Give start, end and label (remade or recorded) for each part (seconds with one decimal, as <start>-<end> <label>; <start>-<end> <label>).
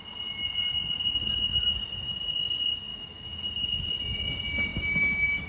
0.0-2.9 recorded; 2.9-3.6 remade; 3.6-4.7 recorded; 4.7-5.5 remade